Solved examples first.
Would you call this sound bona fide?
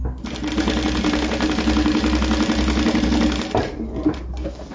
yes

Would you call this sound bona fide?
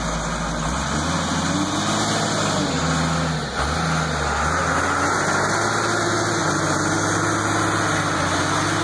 yes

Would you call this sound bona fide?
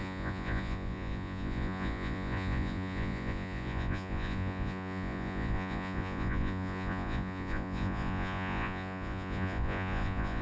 no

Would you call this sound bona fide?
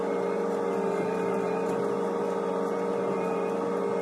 yes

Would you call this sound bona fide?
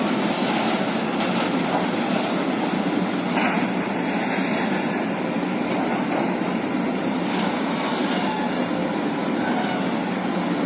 yes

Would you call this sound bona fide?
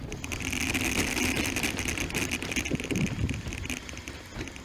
yes